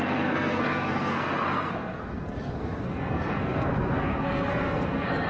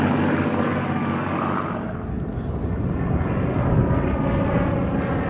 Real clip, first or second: second